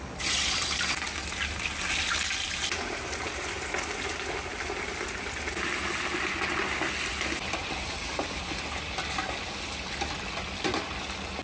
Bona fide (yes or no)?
yes